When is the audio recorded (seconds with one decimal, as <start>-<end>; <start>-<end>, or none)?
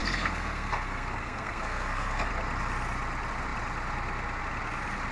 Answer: 2.3-5.1